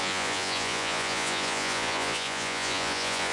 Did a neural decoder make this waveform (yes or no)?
yes